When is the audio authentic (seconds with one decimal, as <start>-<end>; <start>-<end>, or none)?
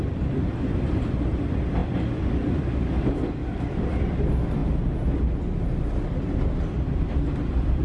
4.6-7.3